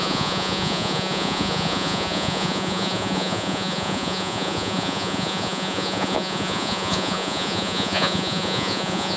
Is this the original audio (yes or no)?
no